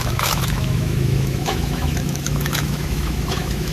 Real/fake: fake